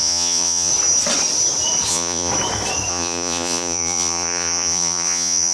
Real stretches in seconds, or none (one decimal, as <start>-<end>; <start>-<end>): 0.7-1.9; 2.3-2.9